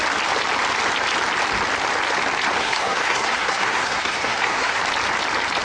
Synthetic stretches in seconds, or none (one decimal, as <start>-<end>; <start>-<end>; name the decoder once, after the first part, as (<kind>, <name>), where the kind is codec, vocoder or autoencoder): 2.6-4.8 (codec, SNAC)